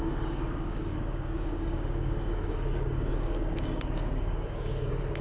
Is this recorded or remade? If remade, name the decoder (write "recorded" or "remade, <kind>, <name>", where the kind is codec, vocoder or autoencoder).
remade, codec, DAC